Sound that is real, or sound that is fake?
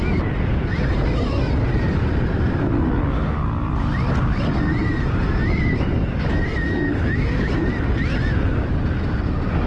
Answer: real